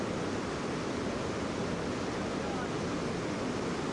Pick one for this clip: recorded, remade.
recorded